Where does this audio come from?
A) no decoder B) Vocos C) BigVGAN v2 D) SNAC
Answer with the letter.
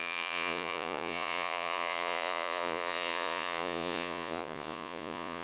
B